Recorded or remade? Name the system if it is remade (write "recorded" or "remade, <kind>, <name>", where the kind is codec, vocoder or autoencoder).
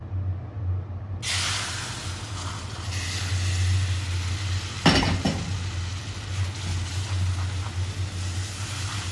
recorded